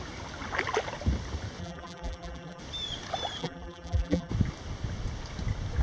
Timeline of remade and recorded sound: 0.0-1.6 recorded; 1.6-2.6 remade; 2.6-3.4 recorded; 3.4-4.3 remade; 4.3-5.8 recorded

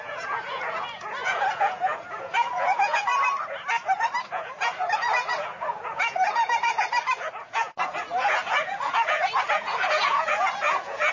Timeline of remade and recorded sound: 0.0-3.1 remade; 3.1-4.3 recorded; 4.3-11.1 remade

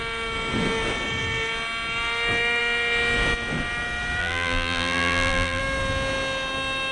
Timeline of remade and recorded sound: 0.0-4.2 recorded; 4.2-5.6 remade; 5.6-6.9 recorded

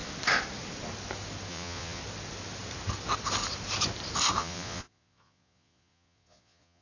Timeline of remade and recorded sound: 0.0-1.5 recorded; 1.5-2.0 remade; 2.0-4.4 recorded; 4.4-6.8 remade

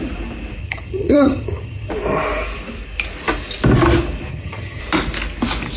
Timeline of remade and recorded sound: 0.0-0.6 recorded; 0.6-1.9 remade; 1.9-4.3 recorded; 4.3-4.8 remade; 4.8-5.8 recorded